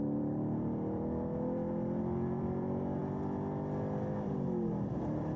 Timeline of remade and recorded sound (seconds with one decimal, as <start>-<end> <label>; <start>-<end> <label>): 0.0-3.0 remade; 3.0-4.9 recorded; 4.9-5.4 remade